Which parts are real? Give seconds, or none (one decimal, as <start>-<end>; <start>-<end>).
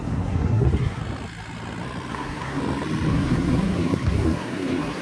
1.0-2.1; 2.6-3.1